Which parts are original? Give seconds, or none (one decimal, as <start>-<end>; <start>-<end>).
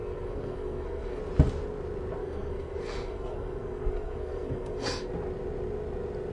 1.2-2.2; 5.1-6.3